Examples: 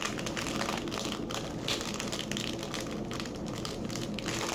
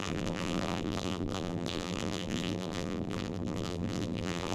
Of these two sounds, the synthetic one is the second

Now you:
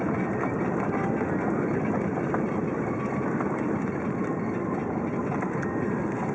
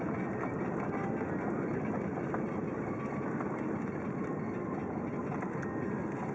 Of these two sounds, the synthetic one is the first